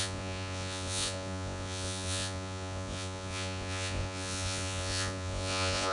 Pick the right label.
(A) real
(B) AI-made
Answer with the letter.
B